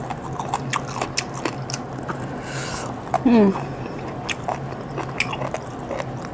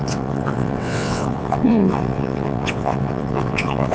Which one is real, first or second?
first